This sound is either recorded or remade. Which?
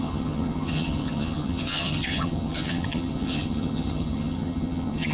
remade